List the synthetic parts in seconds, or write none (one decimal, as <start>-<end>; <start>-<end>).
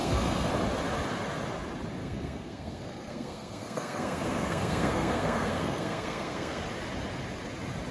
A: 0.0-0.5; 2.0-6.6